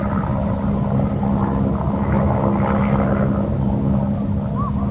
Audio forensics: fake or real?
real